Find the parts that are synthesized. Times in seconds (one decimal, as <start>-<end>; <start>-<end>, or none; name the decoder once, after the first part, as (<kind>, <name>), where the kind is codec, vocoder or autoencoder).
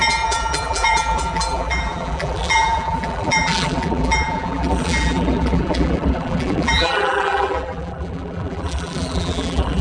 0.0-9.8 (vocoder, BigVGAN v2)